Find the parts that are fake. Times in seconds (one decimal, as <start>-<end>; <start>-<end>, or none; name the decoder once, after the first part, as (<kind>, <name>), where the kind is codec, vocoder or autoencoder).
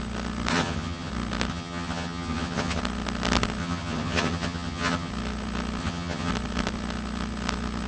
0.5-1.1 (vocoder, HiFi-GAN); 1.5-2.8; 3.6-5.1; 5.8-6.3